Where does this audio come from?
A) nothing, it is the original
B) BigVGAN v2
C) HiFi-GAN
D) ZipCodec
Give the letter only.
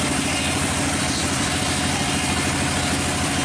B